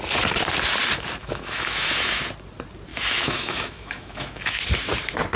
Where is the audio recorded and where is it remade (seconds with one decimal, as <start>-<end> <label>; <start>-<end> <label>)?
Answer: 0.0-1.2 recorded; 1.2-2.2 remade; 2.2-2.9 recorded; 2.9-4.6 remade; 4.6-5.4 recorded